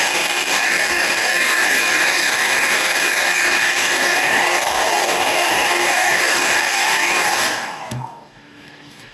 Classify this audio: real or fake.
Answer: fake